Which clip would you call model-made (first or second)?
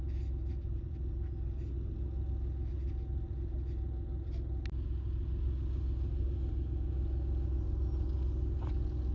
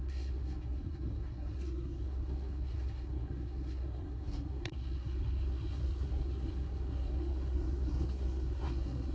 second